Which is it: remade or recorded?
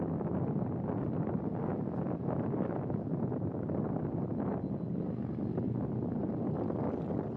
recorded